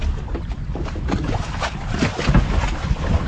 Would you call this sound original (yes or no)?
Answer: yes